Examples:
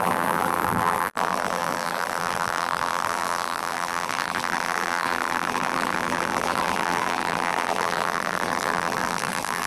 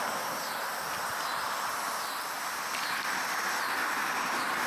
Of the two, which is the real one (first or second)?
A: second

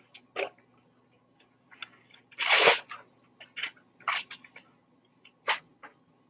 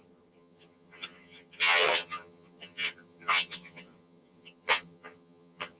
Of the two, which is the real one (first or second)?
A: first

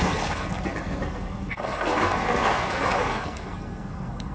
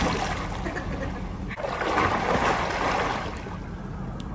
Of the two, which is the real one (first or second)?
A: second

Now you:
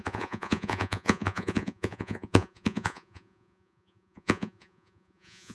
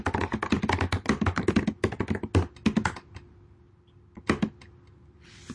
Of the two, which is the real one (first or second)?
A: second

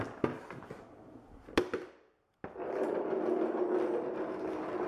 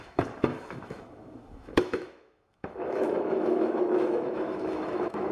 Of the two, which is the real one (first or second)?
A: first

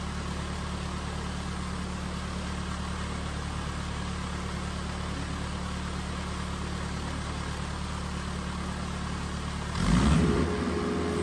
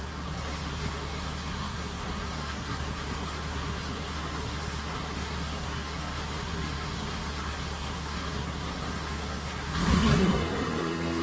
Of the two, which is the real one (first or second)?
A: first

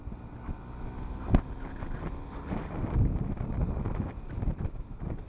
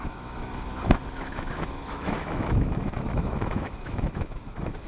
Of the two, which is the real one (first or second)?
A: first